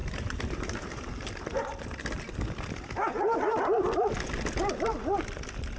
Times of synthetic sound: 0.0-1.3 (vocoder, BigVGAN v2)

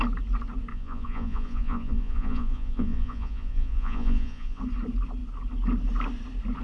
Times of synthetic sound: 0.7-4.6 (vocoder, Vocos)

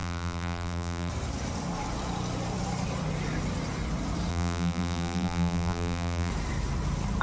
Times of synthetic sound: 0.0-1.1 (vocoder, BigVGAN v2); 4.3-6.3

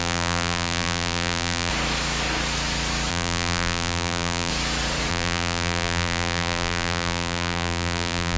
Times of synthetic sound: 0.0-1.7 (vocoder, BigVGAN v2); 3.1-4.5; 5.1-8.4

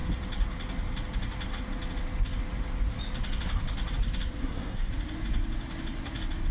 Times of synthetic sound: 4.4-4.9 (codec, SNAC)

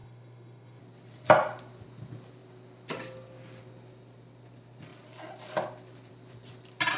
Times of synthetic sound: 0.0-0.8 (autoencoder, DAC-VAE)

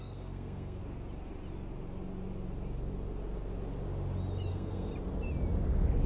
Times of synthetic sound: 0.0-0.8 (codec, SNAC); 4.5-4.9

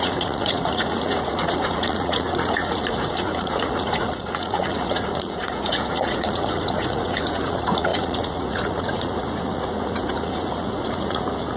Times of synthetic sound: 0.0-11.6 (vocoder, Vocos)